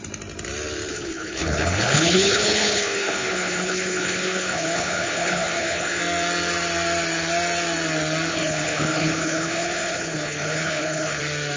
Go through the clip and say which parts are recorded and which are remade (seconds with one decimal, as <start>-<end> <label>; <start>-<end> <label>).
0.0-0.9 recorded; 0.9-6.0 remade; 6.0-8.3 recorded; 8.3-11.2 remade; 11.2-11.6 recorded